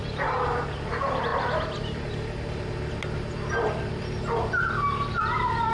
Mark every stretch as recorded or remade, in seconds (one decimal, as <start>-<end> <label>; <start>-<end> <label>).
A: 0.0-5.7 recorded